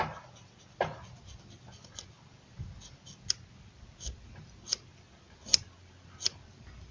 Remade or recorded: recorded